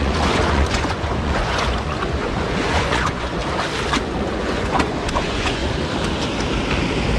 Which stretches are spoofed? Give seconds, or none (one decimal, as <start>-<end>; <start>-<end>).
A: 0.0-3.4; 4.0-5.6